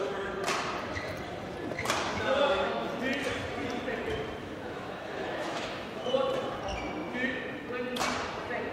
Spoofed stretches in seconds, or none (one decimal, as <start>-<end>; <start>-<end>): 2.1-2.9; 4.4-6.0

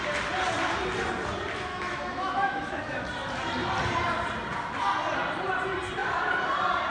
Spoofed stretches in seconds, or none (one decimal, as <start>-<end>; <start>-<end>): 1.7-2.8

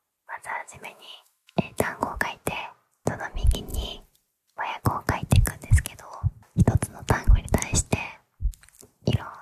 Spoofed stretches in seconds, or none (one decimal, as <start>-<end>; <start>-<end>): 0.6-2.2

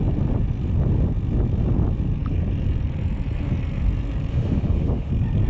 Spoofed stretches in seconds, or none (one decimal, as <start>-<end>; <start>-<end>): 4.3-5.1